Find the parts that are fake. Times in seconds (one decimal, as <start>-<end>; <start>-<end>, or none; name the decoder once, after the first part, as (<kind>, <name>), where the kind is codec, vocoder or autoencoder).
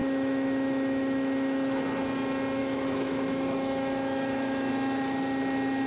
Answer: 0.0-1.8 (autoencoder, DAC-VAE); 2.6-4.7